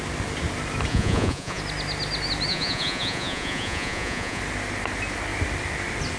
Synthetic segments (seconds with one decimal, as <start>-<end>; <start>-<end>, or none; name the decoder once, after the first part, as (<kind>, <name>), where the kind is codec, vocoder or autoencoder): 0.9-1.6 (vocoder, Vocos); 2.5-4.4